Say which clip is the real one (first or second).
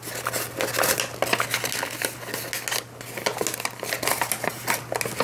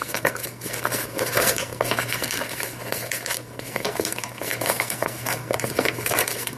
first